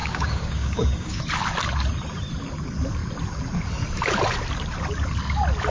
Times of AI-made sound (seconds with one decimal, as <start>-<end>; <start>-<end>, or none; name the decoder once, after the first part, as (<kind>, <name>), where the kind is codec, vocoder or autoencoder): 0.0-1.2 (codec, DAC)